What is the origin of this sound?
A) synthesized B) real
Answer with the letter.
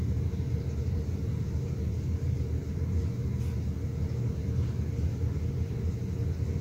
B